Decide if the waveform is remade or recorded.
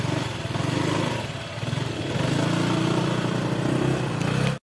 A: recorded